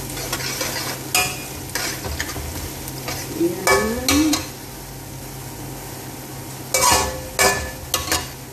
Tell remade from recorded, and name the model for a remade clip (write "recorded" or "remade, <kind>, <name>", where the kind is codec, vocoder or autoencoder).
recorded